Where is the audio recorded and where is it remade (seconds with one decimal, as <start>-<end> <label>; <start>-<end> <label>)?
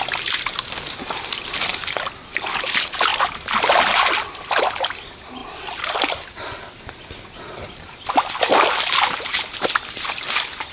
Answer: 0.0-10.7 recorded